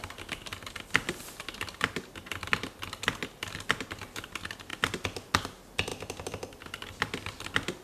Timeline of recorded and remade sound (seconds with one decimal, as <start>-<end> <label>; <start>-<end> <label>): 0.0-7.8 recorded